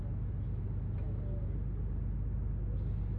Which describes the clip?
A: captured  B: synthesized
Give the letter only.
A